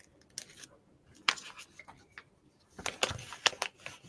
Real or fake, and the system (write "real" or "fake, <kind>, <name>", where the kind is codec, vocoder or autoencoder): real